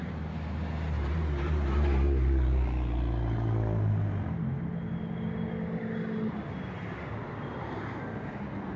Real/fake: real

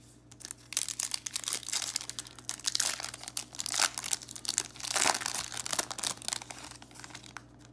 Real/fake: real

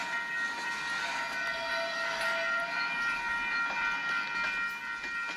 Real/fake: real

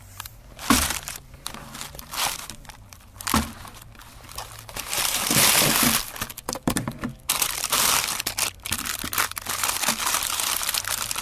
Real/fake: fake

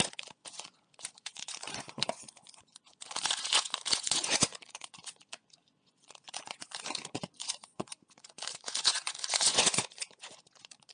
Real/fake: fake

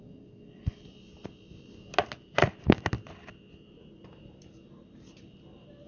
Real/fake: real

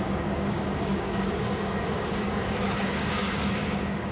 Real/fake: fake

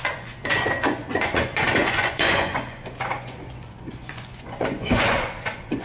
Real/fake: fake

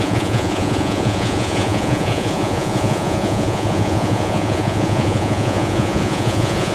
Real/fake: fake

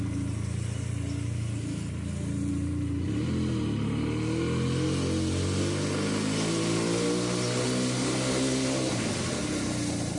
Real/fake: real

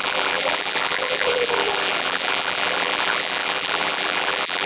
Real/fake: fake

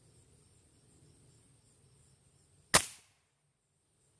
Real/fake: real